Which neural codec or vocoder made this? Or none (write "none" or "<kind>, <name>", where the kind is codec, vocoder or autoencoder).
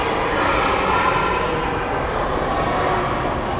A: none